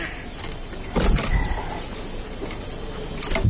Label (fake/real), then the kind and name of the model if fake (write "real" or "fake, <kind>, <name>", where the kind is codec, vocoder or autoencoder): real